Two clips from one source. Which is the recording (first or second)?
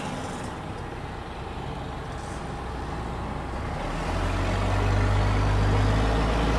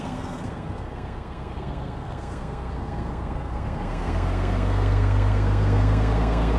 first